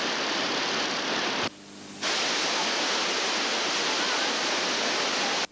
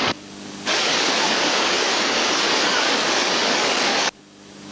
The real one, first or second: first